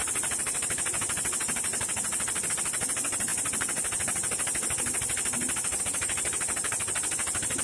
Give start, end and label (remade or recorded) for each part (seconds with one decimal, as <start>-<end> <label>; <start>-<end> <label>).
0.0-7.6 recorded